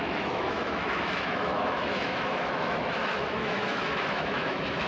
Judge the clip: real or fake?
fake